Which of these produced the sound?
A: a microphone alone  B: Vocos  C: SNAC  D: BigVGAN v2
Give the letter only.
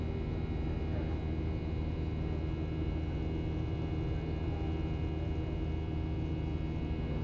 A